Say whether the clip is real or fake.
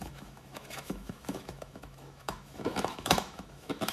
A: fake